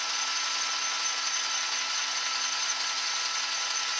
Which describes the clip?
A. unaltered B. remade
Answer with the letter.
A